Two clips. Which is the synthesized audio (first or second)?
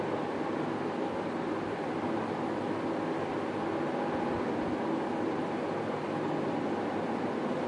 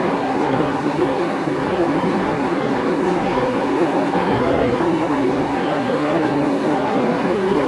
second